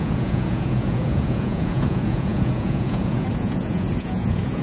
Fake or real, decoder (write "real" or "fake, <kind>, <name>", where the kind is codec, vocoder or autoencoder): fake, vocoder, Vocos